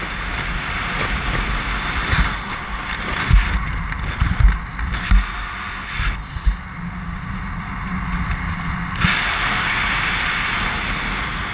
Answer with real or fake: real